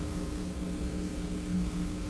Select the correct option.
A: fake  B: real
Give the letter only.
A